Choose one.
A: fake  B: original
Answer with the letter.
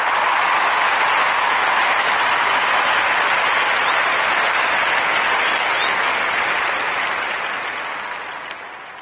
B